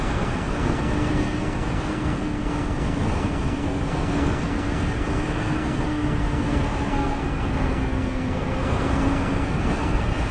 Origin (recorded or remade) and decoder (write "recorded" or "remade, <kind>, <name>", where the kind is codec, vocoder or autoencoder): remade, codec, SNAC